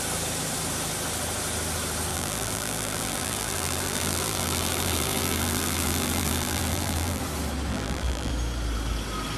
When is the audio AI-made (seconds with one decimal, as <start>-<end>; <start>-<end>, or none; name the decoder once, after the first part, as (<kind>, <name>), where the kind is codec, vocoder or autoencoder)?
2.1-7.2 (vocoder, BigVGAN v2); 7.7-8.3